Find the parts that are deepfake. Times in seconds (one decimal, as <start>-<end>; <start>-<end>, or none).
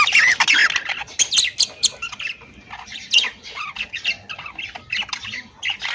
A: none